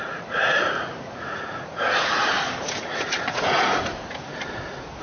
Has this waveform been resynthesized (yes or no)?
yes